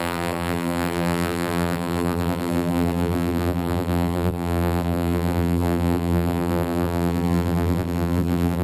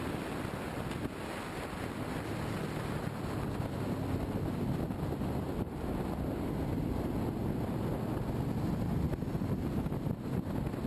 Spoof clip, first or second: first